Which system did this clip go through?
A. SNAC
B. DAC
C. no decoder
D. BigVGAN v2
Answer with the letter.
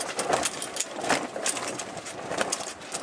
D